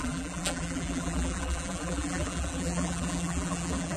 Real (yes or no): no